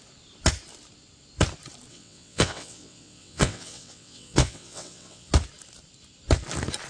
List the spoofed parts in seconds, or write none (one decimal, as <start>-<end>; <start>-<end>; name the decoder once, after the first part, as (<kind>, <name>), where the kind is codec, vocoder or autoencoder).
1.9-5.3 (vocoder, WaveNeXt)